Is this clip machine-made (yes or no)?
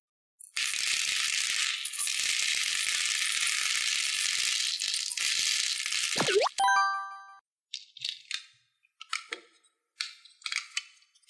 no